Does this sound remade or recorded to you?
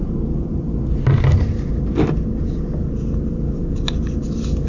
recorded